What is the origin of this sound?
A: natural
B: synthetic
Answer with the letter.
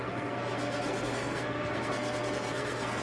B